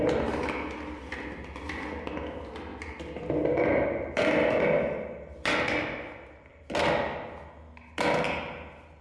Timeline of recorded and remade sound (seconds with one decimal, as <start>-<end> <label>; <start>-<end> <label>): 0.0-9.0 recorded